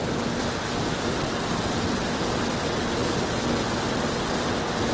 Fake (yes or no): no